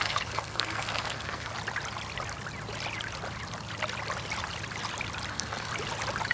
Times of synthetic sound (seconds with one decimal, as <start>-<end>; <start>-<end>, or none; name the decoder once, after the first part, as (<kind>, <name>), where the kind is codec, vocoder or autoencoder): 0.0-1.5 (codec, SNAC); 5.3-5.7